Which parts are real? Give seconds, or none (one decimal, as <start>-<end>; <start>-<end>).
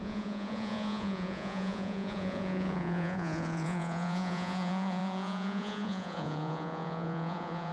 none